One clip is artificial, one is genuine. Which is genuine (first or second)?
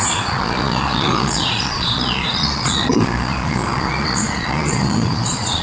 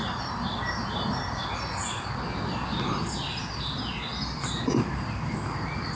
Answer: second